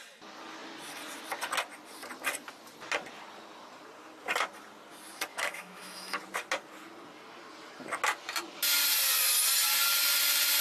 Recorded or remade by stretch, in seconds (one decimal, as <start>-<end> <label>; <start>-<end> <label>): 0.0-5.3 recorded; 5.3-6.2 remade; 6.2-10.6 recorded